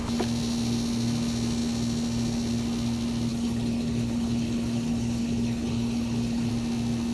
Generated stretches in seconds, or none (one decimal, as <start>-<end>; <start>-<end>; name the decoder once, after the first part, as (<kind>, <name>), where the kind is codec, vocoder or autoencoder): 3.3-6.5 (codec, HILCodec)